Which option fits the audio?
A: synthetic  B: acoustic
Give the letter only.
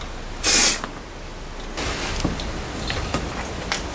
B